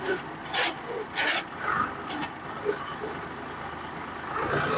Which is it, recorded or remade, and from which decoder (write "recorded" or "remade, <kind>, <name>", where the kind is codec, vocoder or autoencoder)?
recorded